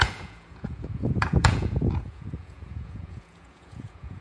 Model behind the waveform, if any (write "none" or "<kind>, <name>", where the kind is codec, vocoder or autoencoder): vocoder, Vocos